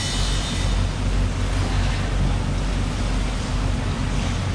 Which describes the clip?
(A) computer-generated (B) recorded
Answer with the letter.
B